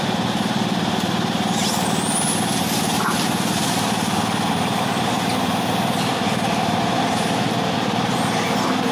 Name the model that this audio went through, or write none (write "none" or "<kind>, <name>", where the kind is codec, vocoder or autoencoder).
none